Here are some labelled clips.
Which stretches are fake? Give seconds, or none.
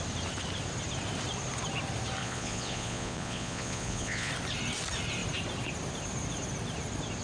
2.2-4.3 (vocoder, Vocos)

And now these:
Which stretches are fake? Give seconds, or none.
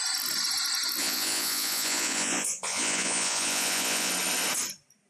1.0-4.1 (vocoder, Vocos)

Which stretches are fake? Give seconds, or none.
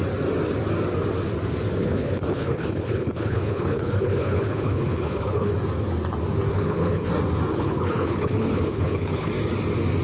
1.8-5.5 (codec, HILCodec); 6.5-7.1; 7.5-9.3